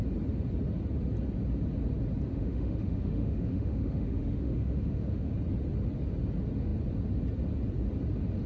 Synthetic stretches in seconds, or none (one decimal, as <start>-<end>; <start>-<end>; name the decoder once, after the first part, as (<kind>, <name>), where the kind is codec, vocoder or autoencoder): 2.3-5.3 (autoencoder, DAC-VAE)